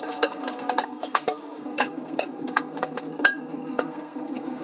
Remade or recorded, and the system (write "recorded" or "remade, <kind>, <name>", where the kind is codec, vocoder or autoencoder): remade, codec, SNAC